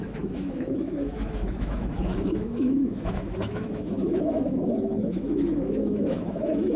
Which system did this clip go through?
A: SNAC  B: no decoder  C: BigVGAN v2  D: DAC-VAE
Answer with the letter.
D